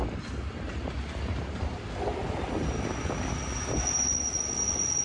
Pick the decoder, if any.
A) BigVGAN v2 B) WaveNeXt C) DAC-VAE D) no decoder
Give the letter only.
D